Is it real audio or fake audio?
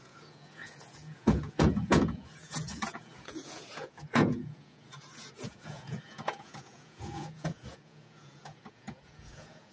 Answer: fake